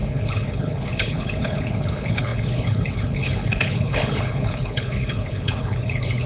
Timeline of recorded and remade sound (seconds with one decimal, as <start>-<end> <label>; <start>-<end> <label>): 0.0-6.3 remade